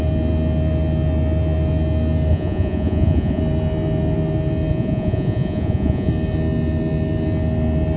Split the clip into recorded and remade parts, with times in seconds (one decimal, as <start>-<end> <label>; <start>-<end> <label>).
0.0-2.3 recorded; 2.3-3.4 remade; 3.4-4.7 recorded; 4.7-6.1 remade; 6.1-8.0 recorded